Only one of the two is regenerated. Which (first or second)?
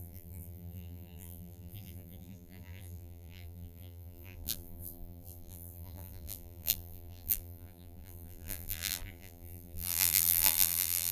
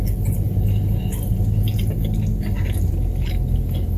first